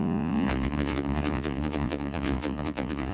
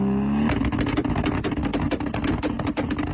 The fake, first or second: first